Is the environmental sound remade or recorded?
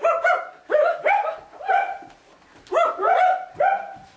recorded